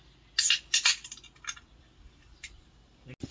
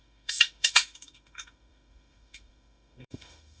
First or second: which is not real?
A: second